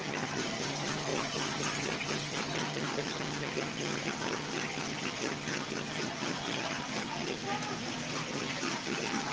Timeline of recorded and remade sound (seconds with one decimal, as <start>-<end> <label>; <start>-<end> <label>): 0.0-7.4 remade; 7.4-8.3 recorded; 8.3-9.3 remade